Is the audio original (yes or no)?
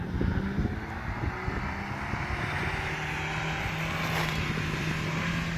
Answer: yes